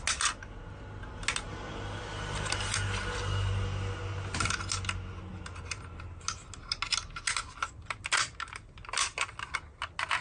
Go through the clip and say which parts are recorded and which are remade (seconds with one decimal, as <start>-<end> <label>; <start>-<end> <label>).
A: 0.0-10.2 recorded